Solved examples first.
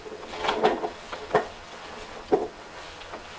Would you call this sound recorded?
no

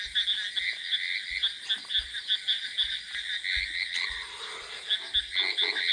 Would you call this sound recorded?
yes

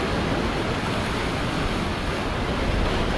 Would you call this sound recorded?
yes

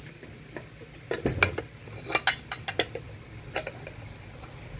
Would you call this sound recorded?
yes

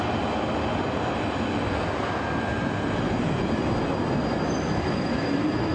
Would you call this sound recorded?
yes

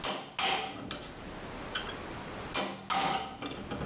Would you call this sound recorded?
yes